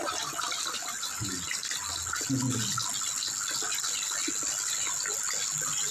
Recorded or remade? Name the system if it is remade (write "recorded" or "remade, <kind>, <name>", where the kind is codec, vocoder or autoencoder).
recorded